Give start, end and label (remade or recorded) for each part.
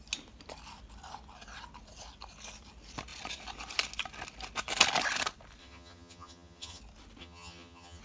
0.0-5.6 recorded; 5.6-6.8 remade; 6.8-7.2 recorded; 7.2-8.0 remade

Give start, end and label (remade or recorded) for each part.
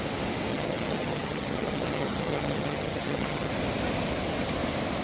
0.0-0.5 recorded; 0.5-3.5 remade; 3.5-5.0 recorded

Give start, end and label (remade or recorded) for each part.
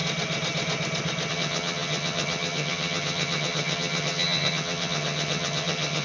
0.0-1.3 recorded; 1.3-6.0 remade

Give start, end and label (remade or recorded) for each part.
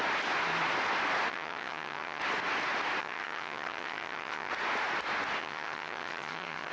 0.0-1.3 recorded; 1.3-2.2 remade; 2.2-3.0 recorded; 3.0-4.5 remade; 4.5-5.4 recorded; 5.4-6.7 remade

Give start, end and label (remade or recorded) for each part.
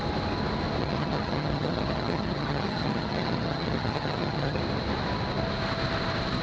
0.0-0.8 recorded; 0.8-4.6 remade; 4.6-6.4 recorded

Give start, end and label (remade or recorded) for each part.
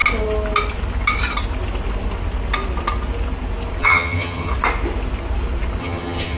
0.0-3.8 recorded; 3.8-4.5 remade; 4.5-5.8 recorded; 5.8-6.4 remade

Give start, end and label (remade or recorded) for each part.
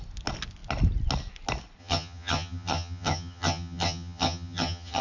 0.0-1.8 recorded; 1.8-5.0 remade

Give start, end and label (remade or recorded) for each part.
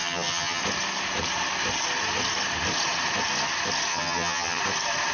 0.0-0.6 remade; 0.6-3.9 recorded; 3.9-4.6 remade; 4.6-5.1 recorded